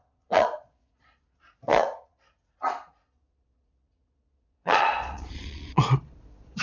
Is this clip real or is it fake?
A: fake